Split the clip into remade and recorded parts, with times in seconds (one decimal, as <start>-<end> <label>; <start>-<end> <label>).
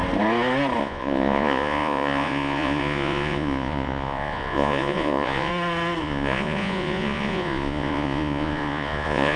0.0-0.8 recorded; 0.8-5.5 remade; 5.5-6.0 recorded; 6.0-9.4 remade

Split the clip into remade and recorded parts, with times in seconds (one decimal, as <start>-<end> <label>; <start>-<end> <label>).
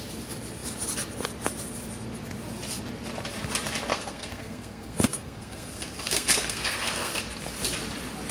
0.0-3.9 recorded; 3.9-7.2 remade; 7.2-8.3 recorded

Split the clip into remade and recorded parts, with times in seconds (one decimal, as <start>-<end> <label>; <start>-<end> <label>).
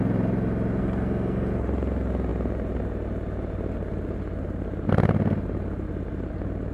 0.0-0.8 recorded; 0.8-1.5 remade; 1.5-6.7 recorded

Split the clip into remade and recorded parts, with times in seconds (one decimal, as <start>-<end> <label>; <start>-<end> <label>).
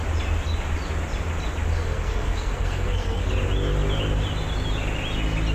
0.0-1.7 recorded; 1.7-3.3 remade; 3.3-5.5 recorded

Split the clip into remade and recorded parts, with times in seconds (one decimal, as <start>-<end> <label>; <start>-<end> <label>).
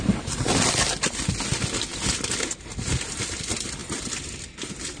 0.0-5.0 recorded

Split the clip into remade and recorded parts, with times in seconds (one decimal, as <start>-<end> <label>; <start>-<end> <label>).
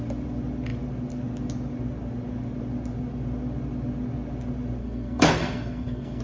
0.0-4.8 recorded; 4.8-6.2 remade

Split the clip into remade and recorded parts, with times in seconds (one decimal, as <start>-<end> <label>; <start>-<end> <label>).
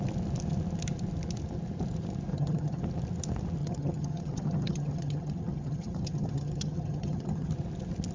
0.0-2.3 recorded; 2.3-2.8 remade; 2.8-3.6 recorded; 3.6-7.5 remade; 7.5-8.1 recorded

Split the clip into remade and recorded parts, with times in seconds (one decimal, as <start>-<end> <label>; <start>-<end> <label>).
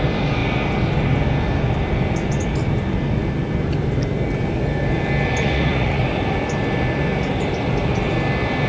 0.0-5.4 recorded; 5.4-6.0 remade; 6.0-8.7 recorded